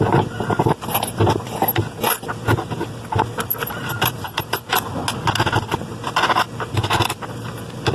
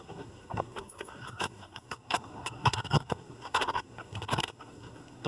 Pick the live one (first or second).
first